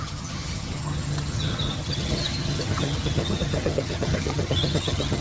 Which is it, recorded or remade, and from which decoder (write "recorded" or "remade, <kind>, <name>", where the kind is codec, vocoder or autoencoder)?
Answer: remade, vocoder, HiFi-GAN